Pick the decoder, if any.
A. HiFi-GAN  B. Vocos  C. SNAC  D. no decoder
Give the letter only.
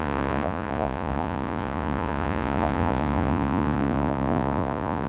B